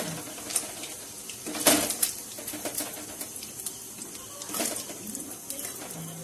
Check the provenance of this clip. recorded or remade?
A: recorded